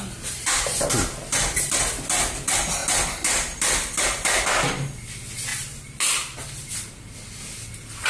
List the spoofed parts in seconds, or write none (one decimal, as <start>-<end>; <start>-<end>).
none